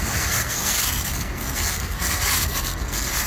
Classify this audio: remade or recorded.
remade